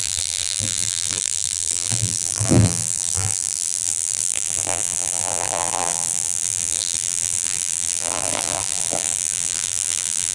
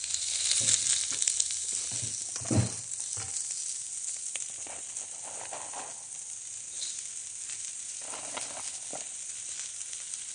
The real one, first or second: second